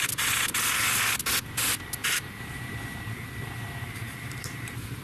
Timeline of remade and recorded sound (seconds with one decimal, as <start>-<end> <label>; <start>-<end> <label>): 0.0-2.0 recorded; 2.0-5.0 remade